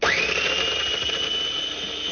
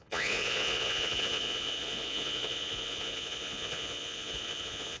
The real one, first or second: first